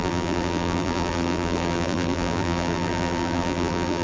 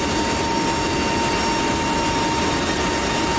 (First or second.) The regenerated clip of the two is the first